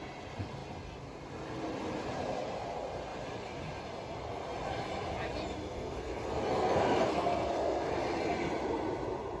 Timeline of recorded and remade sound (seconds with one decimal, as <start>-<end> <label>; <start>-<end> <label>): 0.0-5.6 recorded; 5.6-7.9 remade; 7.9-9.4 recorded